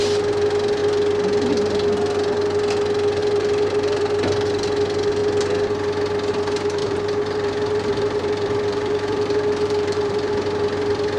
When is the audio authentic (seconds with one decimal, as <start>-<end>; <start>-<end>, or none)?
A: 0.0-3.2; 3.7-6.8; 10.3-11.2